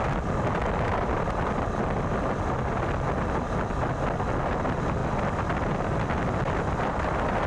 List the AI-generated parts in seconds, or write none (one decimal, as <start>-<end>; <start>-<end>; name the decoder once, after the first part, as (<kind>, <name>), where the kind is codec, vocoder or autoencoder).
none